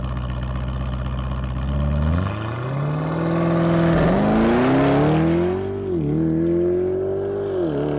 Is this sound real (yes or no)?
yes